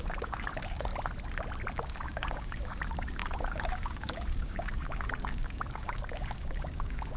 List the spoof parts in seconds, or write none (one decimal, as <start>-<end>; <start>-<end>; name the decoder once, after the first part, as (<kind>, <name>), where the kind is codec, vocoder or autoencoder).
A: 0.0-0.9 (codec, DAC); 1.7-7.2